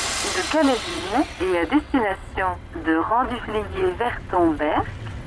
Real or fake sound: fake